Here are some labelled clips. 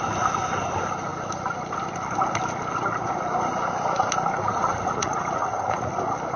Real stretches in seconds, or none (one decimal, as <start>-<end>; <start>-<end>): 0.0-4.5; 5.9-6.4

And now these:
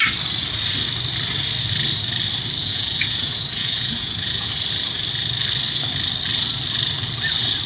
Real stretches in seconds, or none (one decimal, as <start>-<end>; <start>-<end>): 0.0-2.6; 4.5-7.7

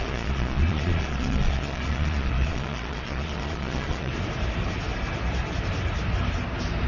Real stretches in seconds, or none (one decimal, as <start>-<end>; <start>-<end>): 4.1-6.9

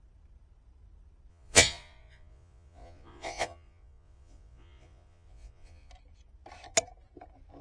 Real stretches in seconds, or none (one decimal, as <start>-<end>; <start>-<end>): 0.0-1.3; 5.9-7.6

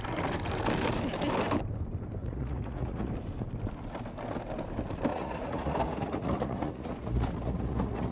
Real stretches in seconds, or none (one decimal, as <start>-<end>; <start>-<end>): 0.0-2.2; 3.1-5.1

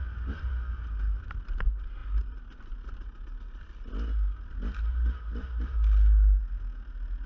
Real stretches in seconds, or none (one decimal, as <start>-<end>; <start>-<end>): 0.0-7.3